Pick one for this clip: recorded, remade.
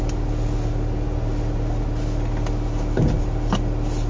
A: recorded